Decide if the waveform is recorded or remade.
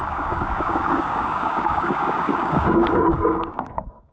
remade